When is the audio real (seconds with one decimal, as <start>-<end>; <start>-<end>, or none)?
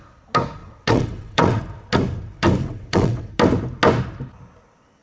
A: 0.0-0.6; 1.6-2.6; 3.3-5.0